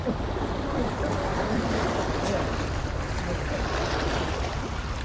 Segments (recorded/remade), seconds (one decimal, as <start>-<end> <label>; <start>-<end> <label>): 0.0-5.0 recorded